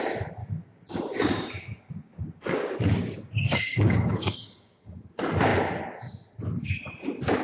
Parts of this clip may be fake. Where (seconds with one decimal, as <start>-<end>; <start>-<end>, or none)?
0.4-4.8